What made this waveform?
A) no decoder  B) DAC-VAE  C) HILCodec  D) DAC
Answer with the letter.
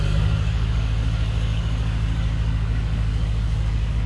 D